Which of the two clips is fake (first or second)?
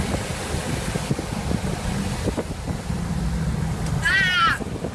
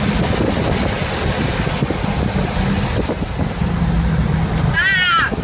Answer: first